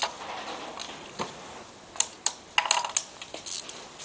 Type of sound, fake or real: real